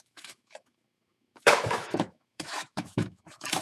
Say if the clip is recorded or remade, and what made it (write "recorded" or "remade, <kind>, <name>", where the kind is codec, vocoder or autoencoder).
remade, autoencoder, DAC-VAE